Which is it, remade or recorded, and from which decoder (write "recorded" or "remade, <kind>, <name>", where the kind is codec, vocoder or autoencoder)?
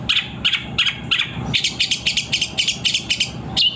recorded